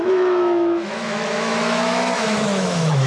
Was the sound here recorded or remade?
remade